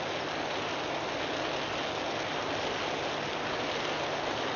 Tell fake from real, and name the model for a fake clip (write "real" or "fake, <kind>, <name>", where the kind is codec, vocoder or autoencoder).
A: real